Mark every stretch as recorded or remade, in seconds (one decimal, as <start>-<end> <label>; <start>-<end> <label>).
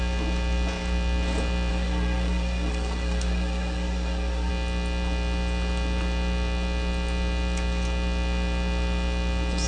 0.0-1.7 recorded; 1.7-4.5 remade; 4.5-9.7 recorded